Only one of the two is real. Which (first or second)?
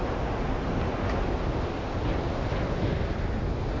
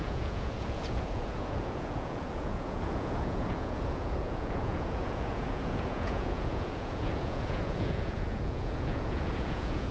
first